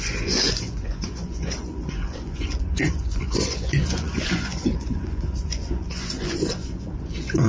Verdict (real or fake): fake